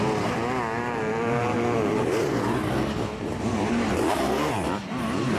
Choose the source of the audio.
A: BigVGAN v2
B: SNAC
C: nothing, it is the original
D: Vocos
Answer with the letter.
C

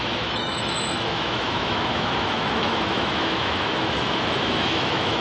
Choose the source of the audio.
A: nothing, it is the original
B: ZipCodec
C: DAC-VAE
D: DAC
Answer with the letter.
C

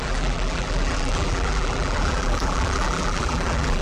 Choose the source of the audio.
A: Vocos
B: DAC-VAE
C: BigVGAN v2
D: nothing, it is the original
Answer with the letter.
C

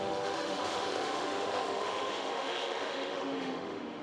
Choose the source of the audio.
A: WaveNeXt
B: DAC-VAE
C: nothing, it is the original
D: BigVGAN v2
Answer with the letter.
B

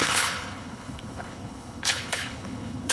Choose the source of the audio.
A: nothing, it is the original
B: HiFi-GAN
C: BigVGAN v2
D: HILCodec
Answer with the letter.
D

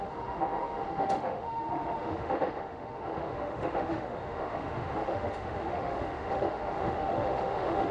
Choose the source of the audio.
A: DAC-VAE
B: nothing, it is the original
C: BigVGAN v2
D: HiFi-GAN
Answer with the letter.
A